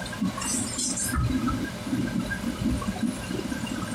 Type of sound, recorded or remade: recorded